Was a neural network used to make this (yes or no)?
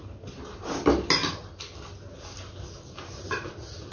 no